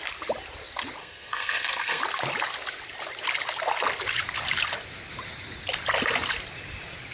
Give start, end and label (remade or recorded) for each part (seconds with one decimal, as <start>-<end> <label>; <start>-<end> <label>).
0.0-1.0 recorded; 1.0-2.0 remade; 2.0-7.1 recorded